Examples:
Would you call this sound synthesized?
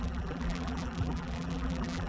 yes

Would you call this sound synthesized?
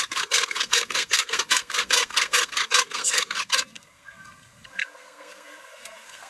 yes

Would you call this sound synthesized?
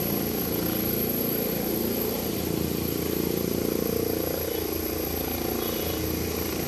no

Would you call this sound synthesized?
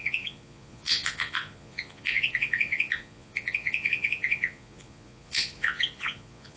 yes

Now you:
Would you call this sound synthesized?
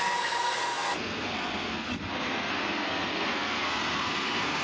yes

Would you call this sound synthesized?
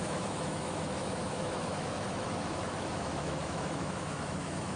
yes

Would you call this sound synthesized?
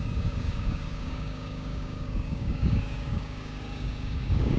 yes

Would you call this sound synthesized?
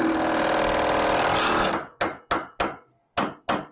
no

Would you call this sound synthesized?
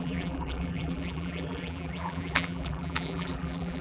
yes